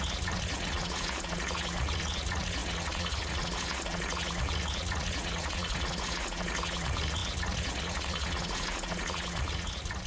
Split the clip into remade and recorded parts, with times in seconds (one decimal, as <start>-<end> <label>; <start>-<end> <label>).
0.0-10.1 remade